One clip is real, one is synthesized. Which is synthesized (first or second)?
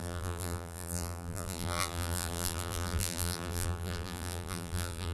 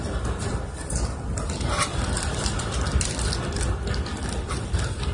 first